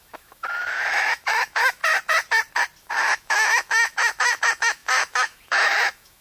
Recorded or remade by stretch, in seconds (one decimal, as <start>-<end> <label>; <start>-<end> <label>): 0.0-1.8 remade; 1.8-2.8 recorded; 2.8-6.2 remade